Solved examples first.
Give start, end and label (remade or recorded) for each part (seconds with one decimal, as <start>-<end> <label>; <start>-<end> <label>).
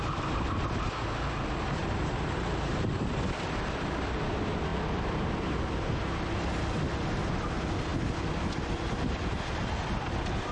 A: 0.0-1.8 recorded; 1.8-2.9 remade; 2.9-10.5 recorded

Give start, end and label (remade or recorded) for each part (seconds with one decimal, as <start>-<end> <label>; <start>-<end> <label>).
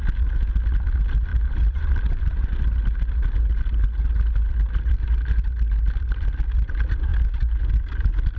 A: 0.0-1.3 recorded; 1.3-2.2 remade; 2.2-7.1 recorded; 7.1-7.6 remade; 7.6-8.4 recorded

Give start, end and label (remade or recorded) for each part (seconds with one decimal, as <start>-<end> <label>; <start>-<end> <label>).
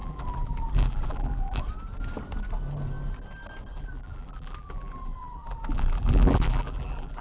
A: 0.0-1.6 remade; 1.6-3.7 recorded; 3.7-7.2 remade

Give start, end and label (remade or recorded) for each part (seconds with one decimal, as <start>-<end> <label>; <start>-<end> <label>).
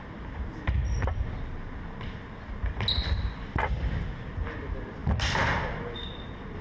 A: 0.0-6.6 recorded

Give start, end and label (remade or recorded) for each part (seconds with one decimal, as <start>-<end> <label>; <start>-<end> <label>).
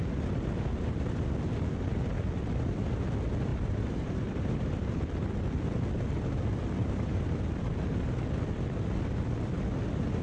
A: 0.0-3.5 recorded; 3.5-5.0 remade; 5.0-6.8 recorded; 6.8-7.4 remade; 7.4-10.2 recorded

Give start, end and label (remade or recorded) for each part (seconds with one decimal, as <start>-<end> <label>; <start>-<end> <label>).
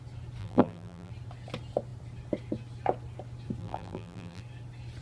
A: 0.0-0.4 recorded; 0.4-1.1 remade; 1.1-3.6 recorded; 3.6-4.4 remade; 4.4-5.0 recorded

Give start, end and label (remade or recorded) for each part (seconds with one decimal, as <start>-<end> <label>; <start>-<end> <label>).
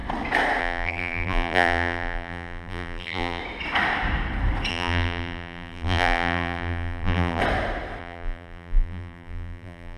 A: 0.0-0.6 recorded; 0.6-3.4 remade; 3.4-4.7 recorded; 4.7-7.4 remade; 7.4-8.0 recorded; 8.0-10.0 remade